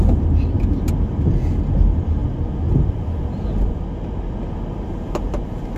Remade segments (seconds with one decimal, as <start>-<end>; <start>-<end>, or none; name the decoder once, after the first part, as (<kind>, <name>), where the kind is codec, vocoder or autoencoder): none